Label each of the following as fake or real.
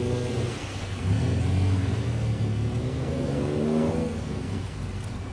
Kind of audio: fake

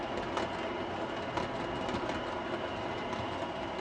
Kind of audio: real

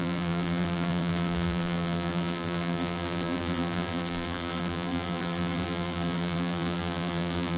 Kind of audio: fake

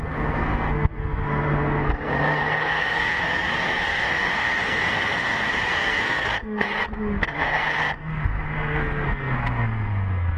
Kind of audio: fake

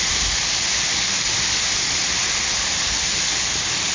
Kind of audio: real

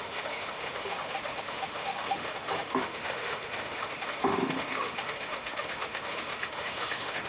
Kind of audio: fake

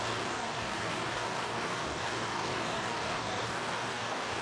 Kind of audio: fake